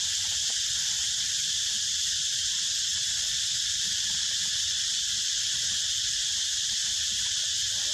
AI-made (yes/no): yes